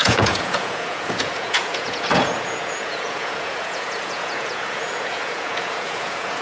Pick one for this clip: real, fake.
fake